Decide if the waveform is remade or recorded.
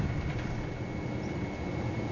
recorded